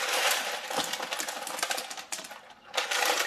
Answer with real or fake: real